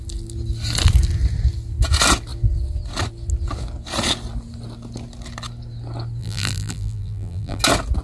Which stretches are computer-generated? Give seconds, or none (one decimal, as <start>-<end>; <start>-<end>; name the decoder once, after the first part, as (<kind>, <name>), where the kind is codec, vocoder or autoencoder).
6.2-7.6 (vocoder, BigVGAN v2)